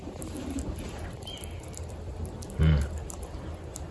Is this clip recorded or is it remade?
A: recorded